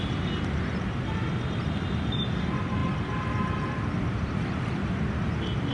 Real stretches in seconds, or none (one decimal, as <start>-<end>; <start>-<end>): 0.0-5.7